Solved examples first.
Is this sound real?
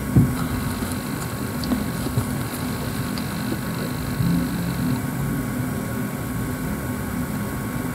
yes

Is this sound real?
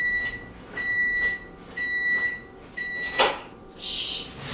yes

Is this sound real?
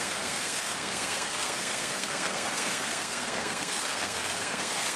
no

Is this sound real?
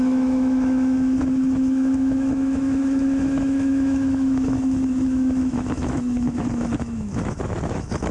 no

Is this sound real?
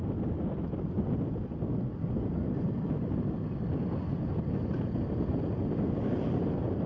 yes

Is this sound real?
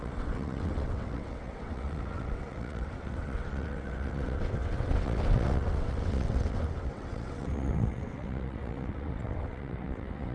no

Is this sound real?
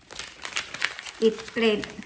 yes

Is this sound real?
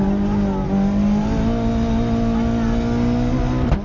yes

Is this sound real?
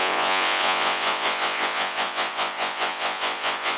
no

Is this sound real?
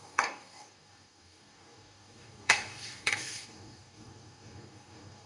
no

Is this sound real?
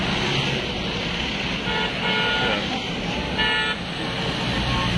yes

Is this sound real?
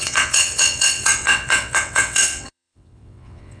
no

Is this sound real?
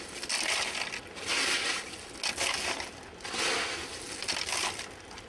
yes